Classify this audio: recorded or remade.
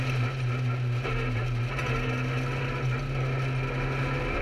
recorded